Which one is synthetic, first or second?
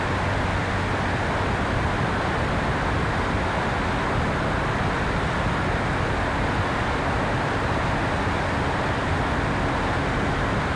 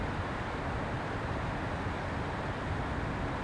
second